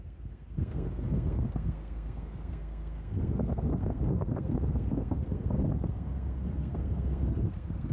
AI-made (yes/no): yes